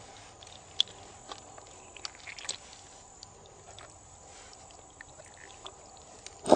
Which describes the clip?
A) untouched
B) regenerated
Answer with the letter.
A